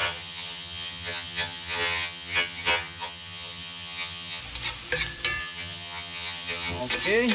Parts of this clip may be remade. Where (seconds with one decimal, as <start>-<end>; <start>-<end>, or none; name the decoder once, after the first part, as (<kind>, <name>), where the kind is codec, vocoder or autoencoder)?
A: 0.0-4.4 (vocoder, HiFi-GAN); 5.4-6.8